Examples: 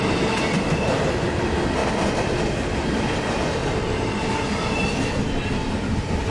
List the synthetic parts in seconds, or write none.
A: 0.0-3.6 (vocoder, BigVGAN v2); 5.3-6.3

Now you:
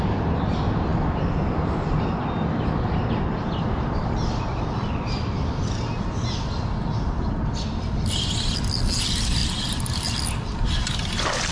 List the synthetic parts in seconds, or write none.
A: 9.4-10.2 (vocoder, BigVGAN v2)